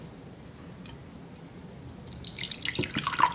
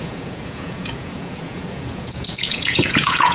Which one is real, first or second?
first